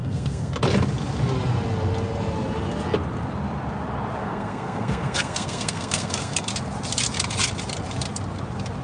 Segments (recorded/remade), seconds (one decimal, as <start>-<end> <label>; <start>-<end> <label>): 0.0-0.5 remade; 0.5-4.2 recorded; 4.2-6.5 remade; 6.5-8.8 recorded